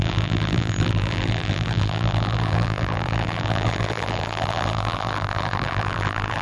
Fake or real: fake